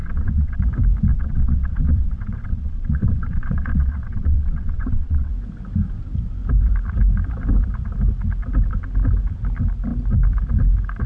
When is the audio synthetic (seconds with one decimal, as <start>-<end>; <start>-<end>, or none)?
0.0-0.6; 1.1-5.3